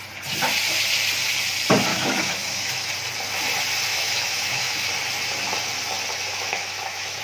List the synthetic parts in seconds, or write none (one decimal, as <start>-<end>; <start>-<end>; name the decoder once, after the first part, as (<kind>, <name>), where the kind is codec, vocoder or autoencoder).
1.9-2.9 (autoencoder, DAC-VAE); 3.9-4.9; 6.3-7.2